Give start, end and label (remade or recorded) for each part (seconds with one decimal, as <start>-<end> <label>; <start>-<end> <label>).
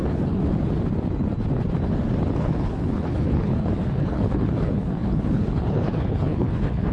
0.0-0.4 remade; 0.4-2.4 recorded; 2.4-6.9 remade